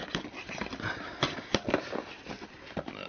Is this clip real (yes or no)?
yes